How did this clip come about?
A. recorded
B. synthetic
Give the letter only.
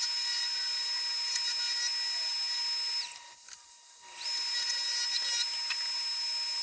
A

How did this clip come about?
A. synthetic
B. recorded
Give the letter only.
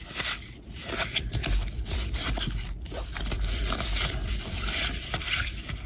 B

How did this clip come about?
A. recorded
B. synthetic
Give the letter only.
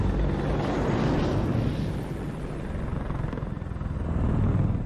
A